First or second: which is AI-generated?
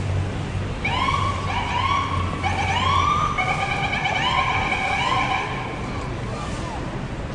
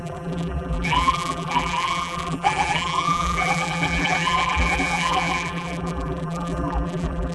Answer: second